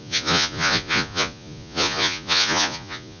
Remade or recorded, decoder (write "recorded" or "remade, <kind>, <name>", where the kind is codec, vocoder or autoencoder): remade, vocoder, Vocos